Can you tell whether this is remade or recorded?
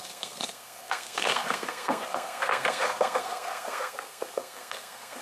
remade